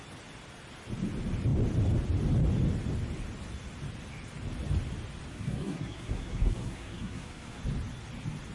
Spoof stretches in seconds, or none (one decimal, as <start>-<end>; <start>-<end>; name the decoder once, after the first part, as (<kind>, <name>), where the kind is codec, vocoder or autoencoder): 5.3-7.6 (codec, SNAC)